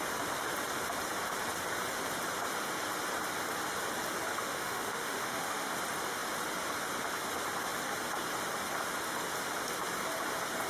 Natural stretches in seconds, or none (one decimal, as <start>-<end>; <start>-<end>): 0.0-4.3; 5.8-10.7